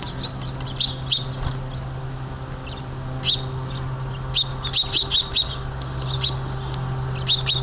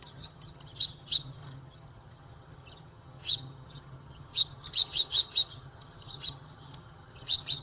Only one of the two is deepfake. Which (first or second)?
second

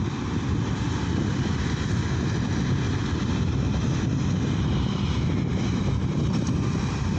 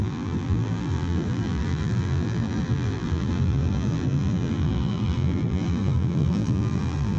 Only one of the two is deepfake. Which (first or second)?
second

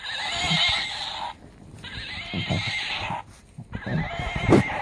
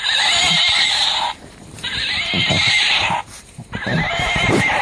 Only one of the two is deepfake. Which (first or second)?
second